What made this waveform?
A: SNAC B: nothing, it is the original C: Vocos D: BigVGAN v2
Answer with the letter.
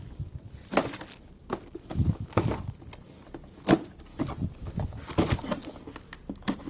B